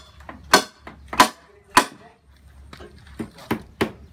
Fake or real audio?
real